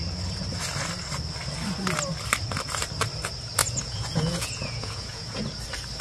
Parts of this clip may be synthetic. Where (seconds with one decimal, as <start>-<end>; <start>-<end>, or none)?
3.6-5.4